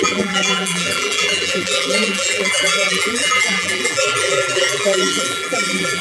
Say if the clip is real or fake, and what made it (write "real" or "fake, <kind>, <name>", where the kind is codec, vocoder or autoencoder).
fake, vocoder, BigVGAN v2